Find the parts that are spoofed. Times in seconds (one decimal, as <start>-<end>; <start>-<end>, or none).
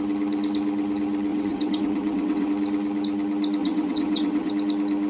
1.3-2.5; 3.6-4.5